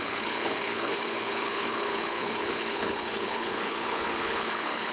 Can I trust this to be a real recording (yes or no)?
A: no